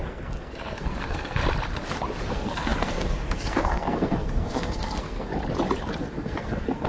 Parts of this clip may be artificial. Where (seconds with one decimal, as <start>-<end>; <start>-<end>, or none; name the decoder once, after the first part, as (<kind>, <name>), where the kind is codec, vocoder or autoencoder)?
0.0-1.4 (codec, SNAC); 2.3-5.3; 6.0-6.9